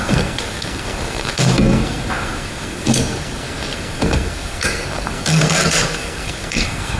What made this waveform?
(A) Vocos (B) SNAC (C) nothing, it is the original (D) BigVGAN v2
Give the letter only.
B